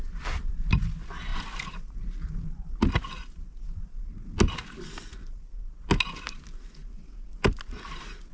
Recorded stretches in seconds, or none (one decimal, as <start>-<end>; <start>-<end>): 0.0-8.3

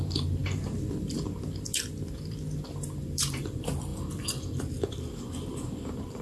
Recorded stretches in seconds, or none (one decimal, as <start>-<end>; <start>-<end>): 3.9-4.8

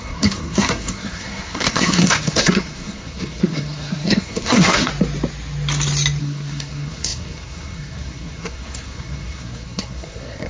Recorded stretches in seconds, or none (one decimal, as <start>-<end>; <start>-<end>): 4.9-6.2